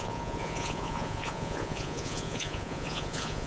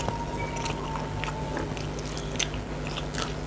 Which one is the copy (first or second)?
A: first